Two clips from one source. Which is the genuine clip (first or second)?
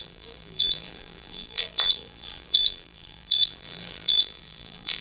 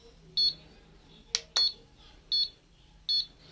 second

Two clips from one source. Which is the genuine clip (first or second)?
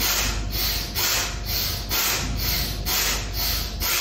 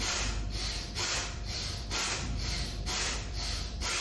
first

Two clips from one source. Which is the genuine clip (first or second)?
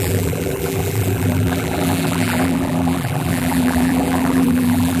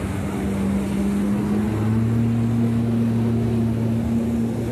second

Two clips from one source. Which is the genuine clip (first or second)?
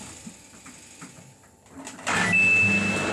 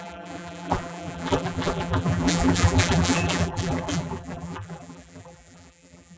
first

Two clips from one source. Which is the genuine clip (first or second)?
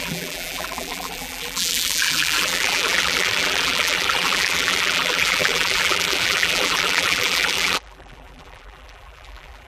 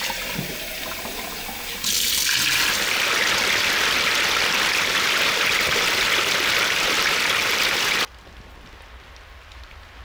second